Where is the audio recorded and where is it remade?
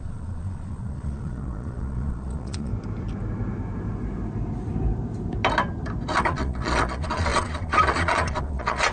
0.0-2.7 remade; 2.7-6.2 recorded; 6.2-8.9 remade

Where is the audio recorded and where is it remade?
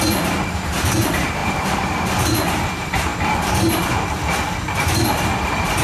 0.0-1.4 recorded; 1.4-2.0 remade; 2.0-5.8 recorded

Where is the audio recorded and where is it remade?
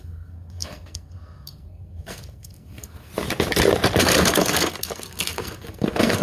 0.0-3.1 remade; 3.1-4.0 recorded; 4.0-6.2 remade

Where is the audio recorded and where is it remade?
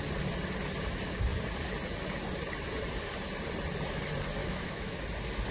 0.0-4.4 recorded; 4.4-5.0 remade; 5.0-5.5 recorded